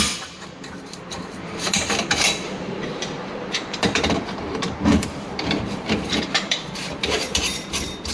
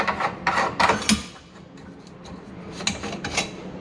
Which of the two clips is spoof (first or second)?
first